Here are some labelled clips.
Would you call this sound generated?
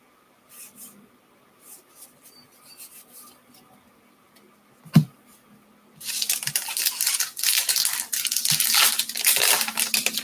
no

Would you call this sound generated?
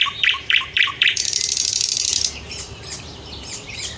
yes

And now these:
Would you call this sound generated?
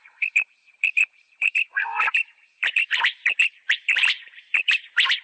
yes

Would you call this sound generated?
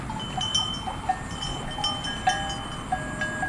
no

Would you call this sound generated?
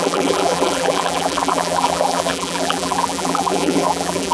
yes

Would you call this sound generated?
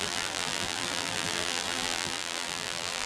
yes